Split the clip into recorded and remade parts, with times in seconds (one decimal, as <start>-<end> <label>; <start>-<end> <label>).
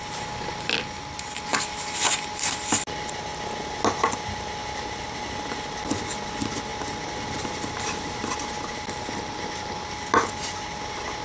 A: 0.0-11.2 recorded